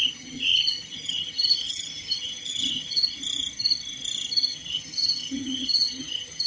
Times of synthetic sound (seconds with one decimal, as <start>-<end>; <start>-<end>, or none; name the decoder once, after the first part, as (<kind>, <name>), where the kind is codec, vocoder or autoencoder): 0.0-3.0 (vocoder, HiFi-GAN); 4.5-6.5